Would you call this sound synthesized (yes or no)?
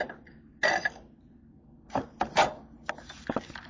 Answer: no